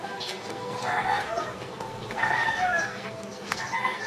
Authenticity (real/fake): fake